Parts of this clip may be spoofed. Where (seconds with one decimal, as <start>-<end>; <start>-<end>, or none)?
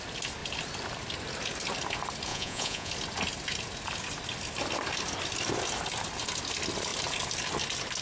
2.3-2.9